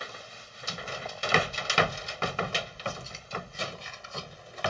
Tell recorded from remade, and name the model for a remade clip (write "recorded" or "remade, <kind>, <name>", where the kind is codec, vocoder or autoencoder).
recorded